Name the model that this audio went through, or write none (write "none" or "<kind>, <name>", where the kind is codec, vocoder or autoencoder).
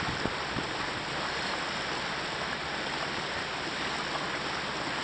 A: none